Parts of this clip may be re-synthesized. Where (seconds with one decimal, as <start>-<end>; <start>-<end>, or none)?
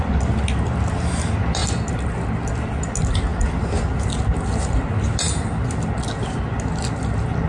none